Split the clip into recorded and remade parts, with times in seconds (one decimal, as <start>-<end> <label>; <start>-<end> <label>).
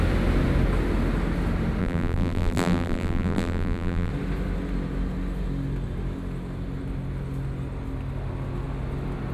0.0-1.8 recorded; 1.8-4.1 remade; 4.1-9.3 recorded